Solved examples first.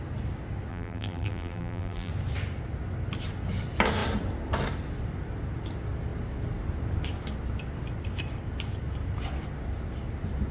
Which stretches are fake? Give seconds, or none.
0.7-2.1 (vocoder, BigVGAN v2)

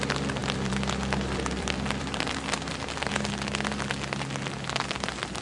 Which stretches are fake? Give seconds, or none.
0.4-3.1 (vocoder, BigVGAN v2)

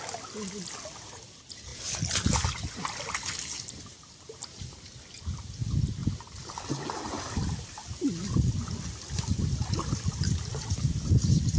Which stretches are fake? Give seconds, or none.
none

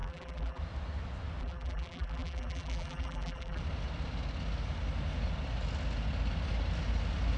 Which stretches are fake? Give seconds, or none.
0.0-0.6 (vocoder, BigVGAN v2); 1.4-3.6

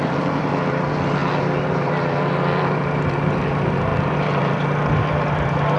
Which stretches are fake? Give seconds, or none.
0.0-5.8 (vocoder, BigVGAN v2)

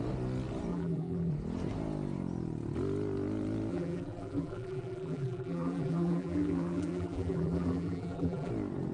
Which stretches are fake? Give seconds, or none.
0.7-1.3 (vocoder, BigVGAN v2); 3.7-8.5